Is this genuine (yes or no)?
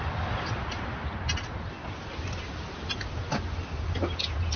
yes